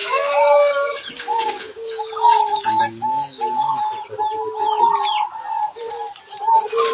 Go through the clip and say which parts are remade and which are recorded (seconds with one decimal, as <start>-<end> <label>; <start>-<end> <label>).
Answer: 0.0-3.8 remade; 3.8-6.9 recorded